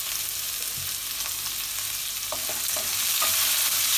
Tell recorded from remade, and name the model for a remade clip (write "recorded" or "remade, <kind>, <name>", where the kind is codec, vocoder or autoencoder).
recorded